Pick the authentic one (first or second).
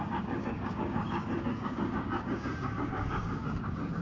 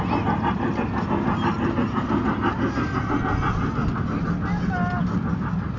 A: second